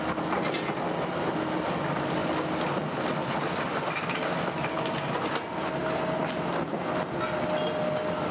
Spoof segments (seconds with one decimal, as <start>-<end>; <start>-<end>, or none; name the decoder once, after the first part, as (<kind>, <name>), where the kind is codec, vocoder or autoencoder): none